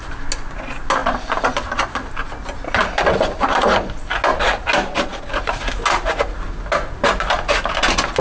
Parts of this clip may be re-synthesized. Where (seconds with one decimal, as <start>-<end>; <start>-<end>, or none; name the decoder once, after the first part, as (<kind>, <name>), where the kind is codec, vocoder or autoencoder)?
none